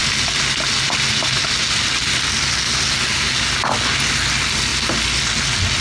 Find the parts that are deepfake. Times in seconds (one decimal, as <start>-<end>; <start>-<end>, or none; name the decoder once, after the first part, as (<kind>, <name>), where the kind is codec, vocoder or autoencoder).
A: none